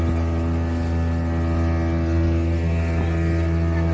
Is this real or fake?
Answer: real